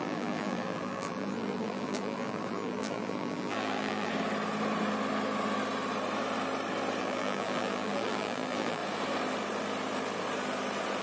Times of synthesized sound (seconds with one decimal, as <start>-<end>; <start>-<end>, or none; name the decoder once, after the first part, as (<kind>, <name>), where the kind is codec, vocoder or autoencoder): 0.0-4.1 (vocoder, BigVGAN v2); 7.0-8.8

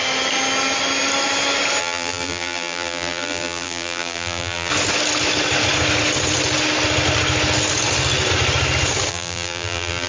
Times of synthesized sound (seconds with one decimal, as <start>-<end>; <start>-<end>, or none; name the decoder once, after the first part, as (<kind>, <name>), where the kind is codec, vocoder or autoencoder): 1.8-4.7 (vocoder, BigVGAN v2); 9.1-10.1